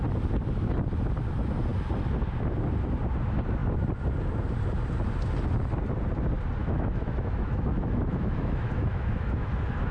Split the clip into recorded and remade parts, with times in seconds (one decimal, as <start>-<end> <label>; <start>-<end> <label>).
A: 0.0-6.6 recorded; 6.6-9.5 remade; 9.5-9.9 recorded